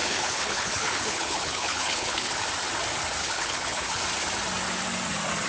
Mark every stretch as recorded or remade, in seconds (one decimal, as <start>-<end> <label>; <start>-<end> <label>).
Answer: 0.0-2.4 remade; 2.4-3.2 recorded; 3.2-4.0 remade; 4.0-5.5 recorded